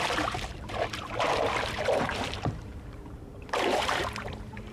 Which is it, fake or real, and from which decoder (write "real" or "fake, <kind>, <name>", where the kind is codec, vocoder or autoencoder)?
fake, vocoder, BigVGAN v2